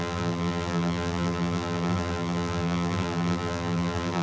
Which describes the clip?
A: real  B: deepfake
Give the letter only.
B